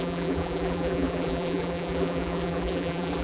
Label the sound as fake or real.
fake